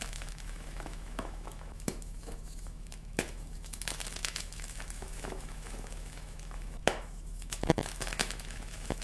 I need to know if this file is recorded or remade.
remade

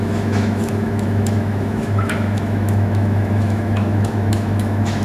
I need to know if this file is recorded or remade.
remade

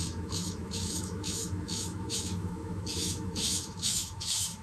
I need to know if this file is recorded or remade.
remade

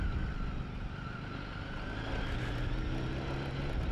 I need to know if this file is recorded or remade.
recorded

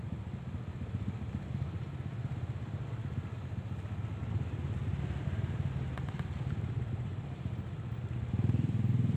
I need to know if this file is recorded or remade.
recorded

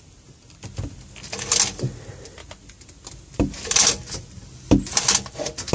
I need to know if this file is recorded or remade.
recorded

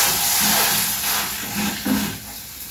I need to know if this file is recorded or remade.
recorded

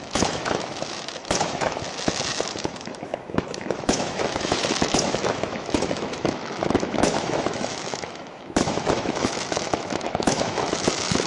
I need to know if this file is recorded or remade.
remade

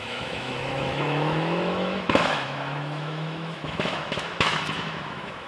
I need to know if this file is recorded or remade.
remade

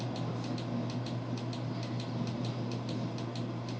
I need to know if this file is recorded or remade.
recorded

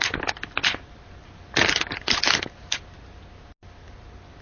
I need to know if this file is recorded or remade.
recorded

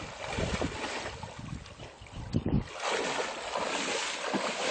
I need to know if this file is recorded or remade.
recorded